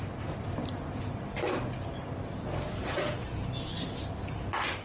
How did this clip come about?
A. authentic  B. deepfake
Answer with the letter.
A